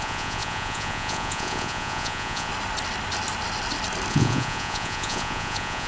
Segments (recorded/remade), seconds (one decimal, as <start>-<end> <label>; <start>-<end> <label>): 0.0-2.5 remade; 2.5-4.1 recorded; 4.1-5.9 remade